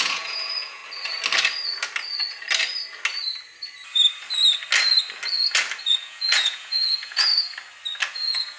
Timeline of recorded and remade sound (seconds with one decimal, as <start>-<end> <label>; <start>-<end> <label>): 0.0-0.8 remade; 0.8-5.8 recorded; 5.8-7.3 remade; 7.3-8.1 recorded; 8.1-8.6 remade